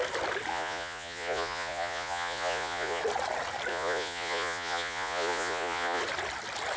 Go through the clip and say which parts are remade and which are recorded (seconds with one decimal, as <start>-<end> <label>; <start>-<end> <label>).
0.0-0.5 recorded; 0.5-3.0 remade; 3.0-3.7 recorded; 3.7-6.0 remade; 6.0-6.8 recorded